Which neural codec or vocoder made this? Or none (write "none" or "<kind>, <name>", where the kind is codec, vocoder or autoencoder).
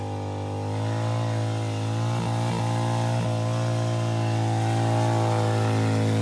none